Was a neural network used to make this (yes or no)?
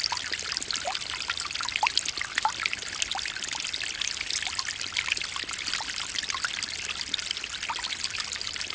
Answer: no